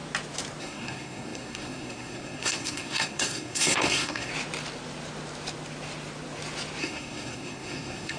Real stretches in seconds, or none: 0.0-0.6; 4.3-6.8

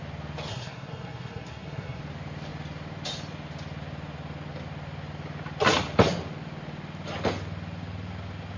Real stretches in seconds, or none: 0.0-0.5; 2.0-8.6

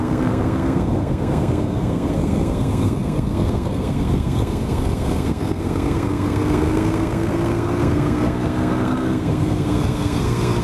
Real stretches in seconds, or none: none

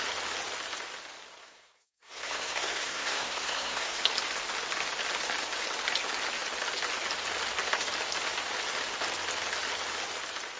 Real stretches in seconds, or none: 0.0-1.4; 4.0-10.6